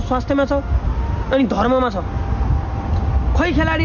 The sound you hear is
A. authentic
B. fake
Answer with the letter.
A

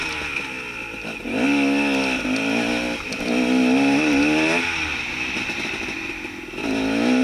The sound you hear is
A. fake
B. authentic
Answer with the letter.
B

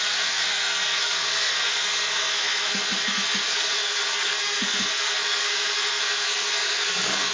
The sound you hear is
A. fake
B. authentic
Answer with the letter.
A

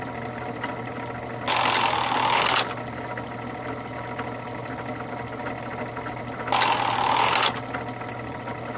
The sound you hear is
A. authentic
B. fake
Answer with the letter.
A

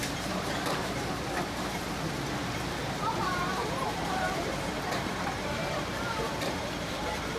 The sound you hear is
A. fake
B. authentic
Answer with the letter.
A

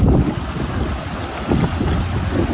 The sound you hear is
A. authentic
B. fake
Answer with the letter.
A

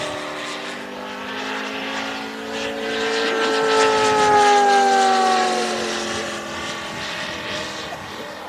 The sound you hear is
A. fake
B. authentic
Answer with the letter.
B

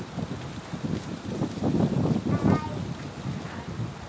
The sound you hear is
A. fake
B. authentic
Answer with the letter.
B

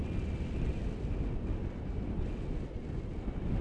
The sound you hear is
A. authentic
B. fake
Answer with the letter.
A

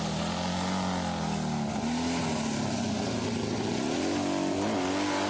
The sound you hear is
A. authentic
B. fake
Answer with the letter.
A